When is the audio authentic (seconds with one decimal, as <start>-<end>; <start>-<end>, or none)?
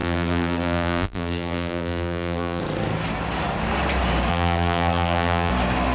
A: 2.6-4.3; 5.5-5.9